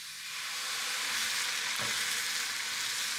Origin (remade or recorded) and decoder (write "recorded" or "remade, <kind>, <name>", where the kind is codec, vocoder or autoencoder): recorded